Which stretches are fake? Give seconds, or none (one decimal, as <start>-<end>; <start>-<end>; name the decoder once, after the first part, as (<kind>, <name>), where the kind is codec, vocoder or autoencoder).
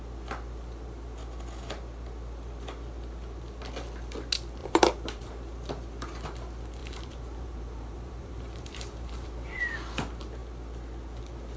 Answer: 4.6-5.2 (vocoder, BigVGAN v2); 6.8-9.6